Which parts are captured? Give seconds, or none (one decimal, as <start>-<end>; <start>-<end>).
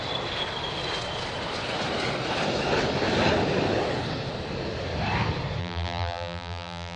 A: 0.0-5.6